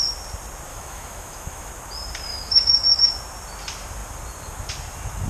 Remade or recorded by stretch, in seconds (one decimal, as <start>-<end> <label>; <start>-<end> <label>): 0.0-0.7 recorded; 0.7-1.7 remade; 1.7-2.3 recorded; 2.3-3.1 remade; 3.1-5.3 recorded